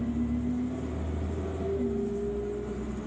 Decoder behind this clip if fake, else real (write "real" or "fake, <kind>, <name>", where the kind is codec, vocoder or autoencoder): real